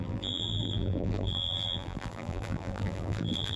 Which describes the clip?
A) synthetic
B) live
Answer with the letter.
A